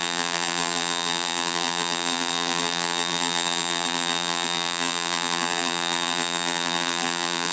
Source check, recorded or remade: remade